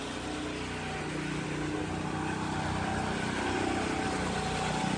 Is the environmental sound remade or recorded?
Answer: recorded